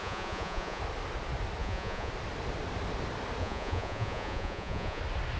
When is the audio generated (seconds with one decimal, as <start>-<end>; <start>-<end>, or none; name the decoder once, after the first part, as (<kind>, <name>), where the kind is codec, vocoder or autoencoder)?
0.0-0.8 (vocoder, Vocos); 1.6-2.1; 3.4-5.0